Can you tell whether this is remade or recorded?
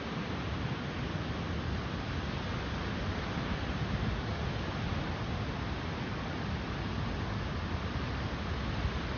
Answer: recorded